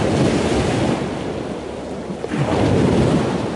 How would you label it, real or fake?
real